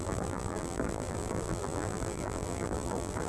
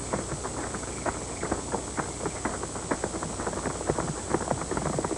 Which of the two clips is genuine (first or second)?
second